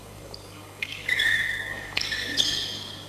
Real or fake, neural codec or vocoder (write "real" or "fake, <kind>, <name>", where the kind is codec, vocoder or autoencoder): fake, codec, DAC